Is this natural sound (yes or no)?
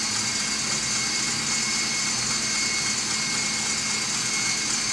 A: yes